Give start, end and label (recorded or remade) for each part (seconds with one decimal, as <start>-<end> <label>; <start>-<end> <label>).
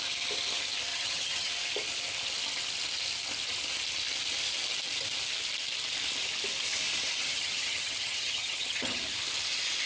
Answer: 0.0-0.9 recorded; 0.9-1.5 remade; 1.5-7.2 recorded; 7.2-9.0 remade; 9.0-9.9 recorded